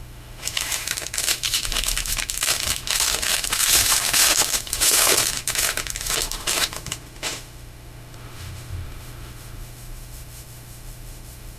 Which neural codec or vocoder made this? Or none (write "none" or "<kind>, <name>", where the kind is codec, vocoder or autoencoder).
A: autoencoder, DAC-VAE